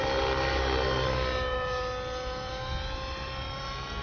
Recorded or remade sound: recorded